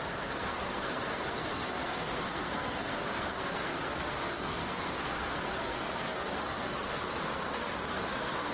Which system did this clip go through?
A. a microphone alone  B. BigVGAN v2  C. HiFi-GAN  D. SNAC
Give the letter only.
D